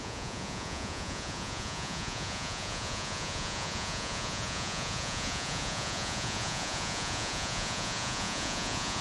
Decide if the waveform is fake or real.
fake